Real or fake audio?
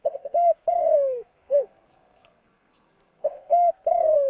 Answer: fake